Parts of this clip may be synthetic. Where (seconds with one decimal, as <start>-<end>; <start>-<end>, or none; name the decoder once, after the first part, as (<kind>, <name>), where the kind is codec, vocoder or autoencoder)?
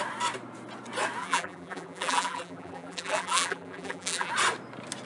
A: 1.2-4.3 (vocoder, BigVGAN v2)